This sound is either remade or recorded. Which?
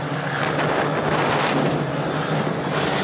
recorded